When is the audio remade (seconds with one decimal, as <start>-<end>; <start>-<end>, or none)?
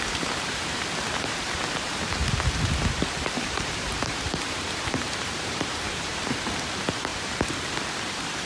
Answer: 0.0-2.2; 3.2-7.1; 8.1-8.5